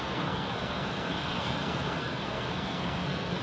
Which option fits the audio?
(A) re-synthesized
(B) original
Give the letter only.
A